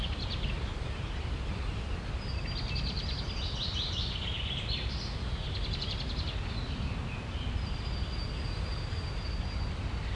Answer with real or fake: real